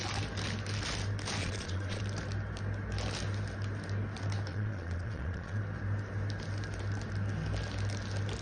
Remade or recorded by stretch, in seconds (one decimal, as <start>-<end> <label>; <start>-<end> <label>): 0.0-1.4 recorded; 1.4-2.0 remade; 2.0-4.5 recorded; 4.5-5.6 remade; 5.6-8.4 recorded